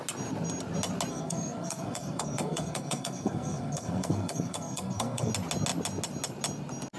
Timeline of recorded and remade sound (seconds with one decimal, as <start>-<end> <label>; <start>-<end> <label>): 0.0-1.1 recorded; 1.1-5.3 remade; 5.3-7.0 recorded